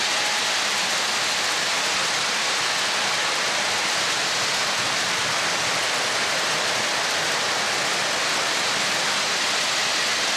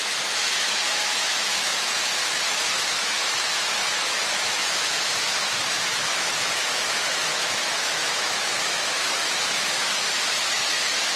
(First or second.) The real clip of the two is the first